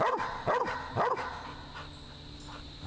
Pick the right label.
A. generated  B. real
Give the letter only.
B